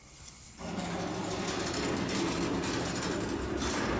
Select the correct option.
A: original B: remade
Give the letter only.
A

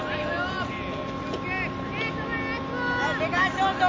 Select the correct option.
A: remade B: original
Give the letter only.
B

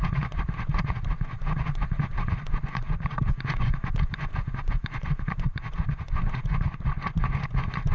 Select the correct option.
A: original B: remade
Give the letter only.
B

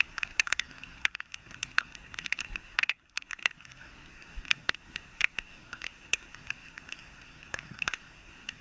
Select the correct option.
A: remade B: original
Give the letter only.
A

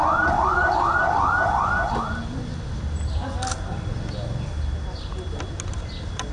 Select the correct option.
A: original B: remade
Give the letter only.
A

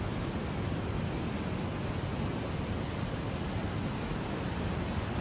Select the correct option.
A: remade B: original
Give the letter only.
B